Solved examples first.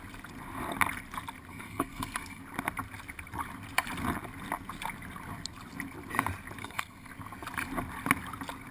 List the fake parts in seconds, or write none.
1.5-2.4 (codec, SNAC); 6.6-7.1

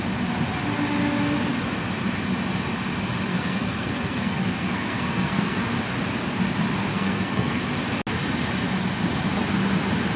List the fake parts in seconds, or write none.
3.3-5.6 (codec, SNAC); 6.9-7.6

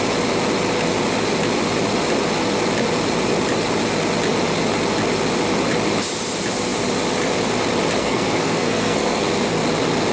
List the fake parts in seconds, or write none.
8.0-9.2 (codec, SNAC)

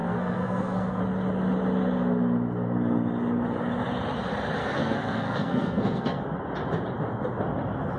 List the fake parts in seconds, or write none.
0.0-1.0 (codec, SNAC); 4.6-6.2

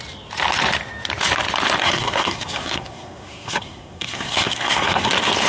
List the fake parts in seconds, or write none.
1.8-5.1 (codec, SNAC)

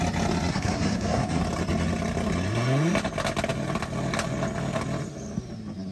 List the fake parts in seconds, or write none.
0.5-1.4 (codec, SNAC)

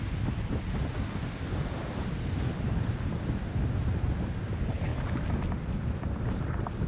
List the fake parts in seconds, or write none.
none